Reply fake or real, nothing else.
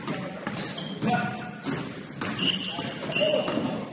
real